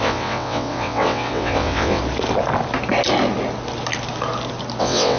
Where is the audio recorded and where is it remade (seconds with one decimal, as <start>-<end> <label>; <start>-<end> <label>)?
0.0-2.0 remade; 2.0-4.8 recorded; 4.8-5.2 remade